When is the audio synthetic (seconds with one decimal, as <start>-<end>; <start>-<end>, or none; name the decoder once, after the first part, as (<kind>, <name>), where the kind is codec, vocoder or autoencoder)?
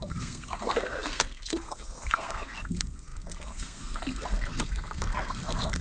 0.0-5.8 (codec, SNAC)